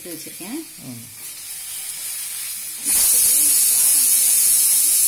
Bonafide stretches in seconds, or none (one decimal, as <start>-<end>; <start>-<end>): 0.6-3.7